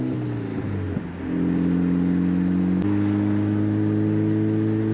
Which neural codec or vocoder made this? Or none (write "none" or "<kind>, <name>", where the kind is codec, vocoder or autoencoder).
none